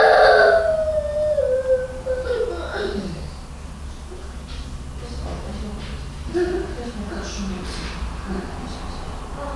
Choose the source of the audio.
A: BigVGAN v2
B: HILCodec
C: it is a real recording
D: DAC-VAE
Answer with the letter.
C